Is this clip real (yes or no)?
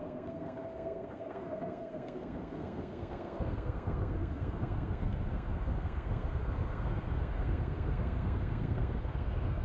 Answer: no